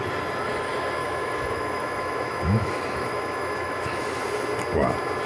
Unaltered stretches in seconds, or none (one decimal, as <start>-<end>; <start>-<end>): 0.0-1.0; 4.2-5.3